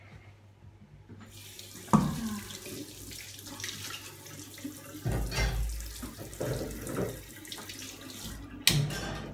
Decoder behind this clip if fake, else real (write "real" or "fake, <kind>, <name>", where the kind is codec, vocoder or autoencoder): real